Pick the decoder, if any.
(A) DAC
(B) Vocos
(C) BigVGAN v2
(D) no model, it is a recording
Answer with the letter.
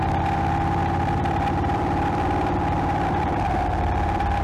C